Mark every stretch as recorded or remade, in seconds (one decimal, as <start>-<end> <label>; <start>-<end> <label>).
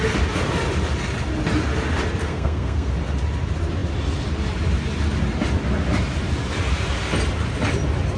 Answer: 0.0-2.2 recorded; 2.2-2.9 remade; 2.9-8.2 recorded